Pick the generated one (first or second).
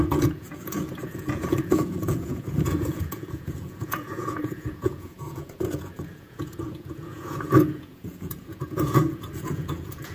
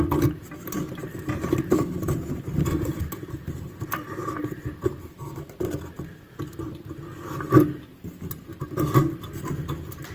first